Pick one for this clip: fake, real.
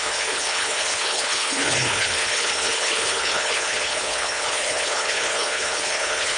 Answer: fake